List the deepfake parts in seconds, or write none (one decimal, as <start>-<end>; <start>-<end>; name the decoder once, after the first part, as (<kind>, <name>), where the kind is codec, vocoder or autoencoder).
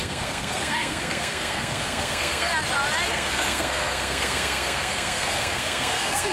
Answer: 0.0-2.5 (codec, SNAC); 3.1-6.3